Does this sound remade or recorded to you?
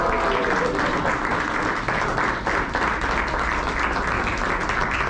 recorded